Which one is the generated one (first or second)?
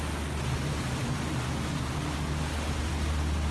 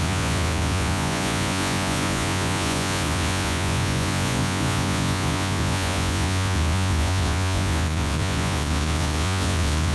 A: second